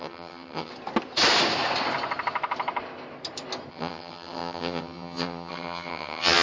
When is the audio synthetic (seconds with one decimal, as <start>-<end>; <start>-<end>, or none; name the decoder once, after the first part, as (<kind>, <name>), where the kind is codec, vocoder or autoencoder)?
0.0-0.7 (vocoder, HiFi-GAN); 3.7-6.4